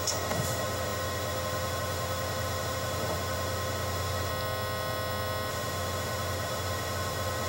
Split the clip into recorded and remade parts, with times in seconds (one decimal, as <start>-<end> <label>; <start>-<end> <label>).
0.0-4.3 remade; 4.3-5.5 recorded; 5.5-7.5 remade